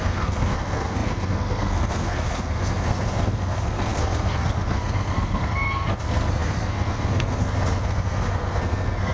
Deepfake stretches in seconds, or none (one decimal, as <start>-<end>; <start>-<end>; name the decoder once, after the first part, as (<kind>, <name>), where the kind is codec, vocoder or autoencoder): 0.0-9.1 (codec, SNAC)